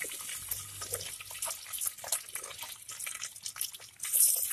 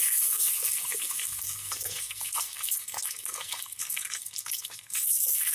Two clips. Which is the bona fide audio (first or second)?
first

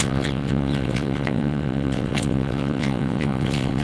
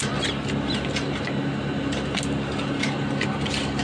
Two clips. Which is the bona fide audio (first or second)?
second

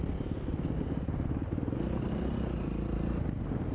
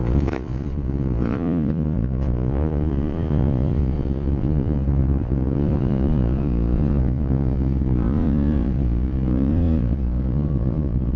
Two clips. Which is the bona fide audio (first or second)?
first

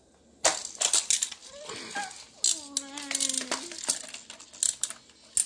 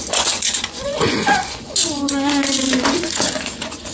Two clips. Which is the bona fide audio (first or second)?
first